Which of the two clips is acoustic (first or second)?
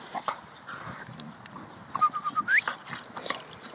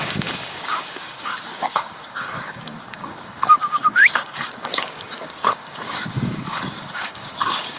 first